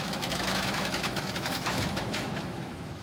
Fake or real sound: fake